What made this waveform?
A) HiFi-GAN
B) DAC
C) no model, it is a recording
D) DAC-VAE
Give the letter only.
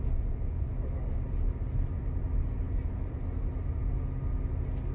C